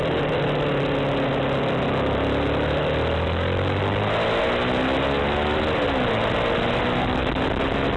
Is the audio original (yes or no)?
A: yes